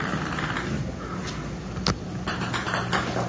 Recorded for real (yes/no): yes